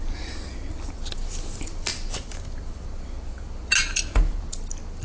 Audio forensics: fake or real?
real